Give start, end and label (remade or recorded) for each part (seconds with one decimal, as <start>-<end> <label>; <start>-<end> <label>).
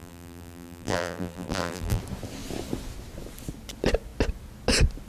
0.0-2.0 remade; 2.0-5.1 recorded